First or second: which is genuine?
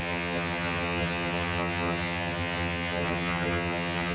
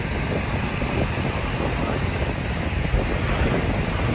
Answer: second